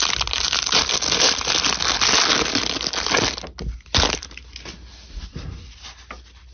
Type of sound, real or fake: real